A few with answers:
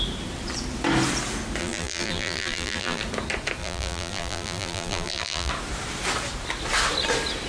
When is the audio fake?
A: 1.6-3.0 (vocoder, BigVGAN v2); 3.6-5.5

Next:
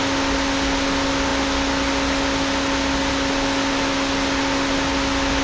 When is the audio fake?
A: none

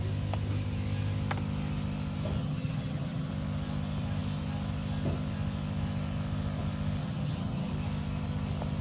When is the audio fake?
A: 2.4-3.3 (vocoder, HiFi-GAN); 7.0-7.7